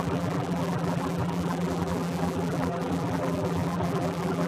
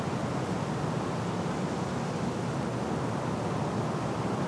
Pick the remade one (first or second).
first